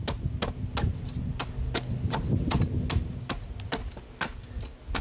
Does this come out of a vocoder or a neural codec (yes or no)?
no